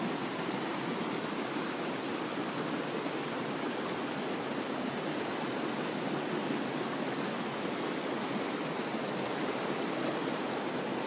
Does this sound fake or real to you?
real